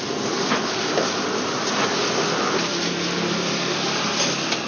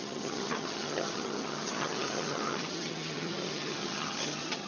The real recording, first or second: first